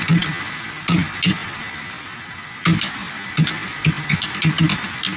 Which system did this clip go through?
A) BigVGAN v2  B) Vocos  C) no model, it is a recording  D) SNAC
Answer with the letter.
C